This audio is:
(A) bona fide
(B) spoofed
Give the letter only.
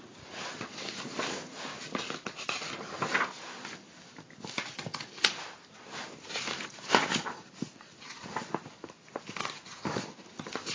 A